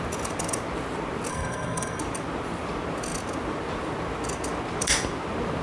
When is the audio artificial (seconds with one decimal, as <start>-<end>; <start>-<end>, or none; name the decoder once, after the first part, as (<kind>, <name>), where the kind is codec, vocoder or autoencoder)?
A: 1.3-2.0 (codec, SNAC)